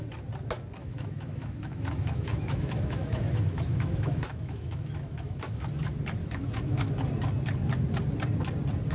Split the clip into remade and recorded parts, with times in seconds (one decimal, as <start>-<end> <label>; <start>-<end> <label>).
0.0-0.8 recorded; 0.8-5.6 remade; 5.6-6.2 recorded; 6.2-6.9 remade; 6.9-8.9 recorded